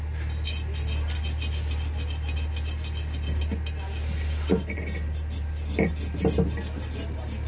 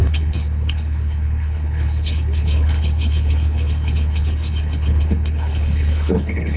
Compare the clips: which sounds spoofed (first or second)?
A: second